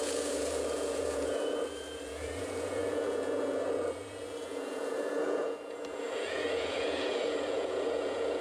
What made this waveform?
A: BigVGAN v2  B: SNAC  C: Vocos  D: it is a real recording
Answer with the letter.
C